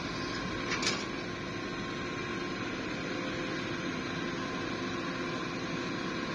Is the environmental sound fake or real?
real